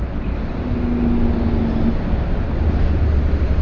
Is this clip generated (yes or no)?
no